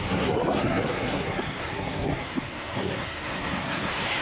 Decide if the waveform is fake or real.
fake